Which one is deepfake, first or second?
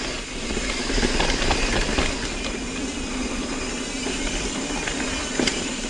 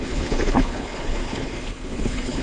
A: second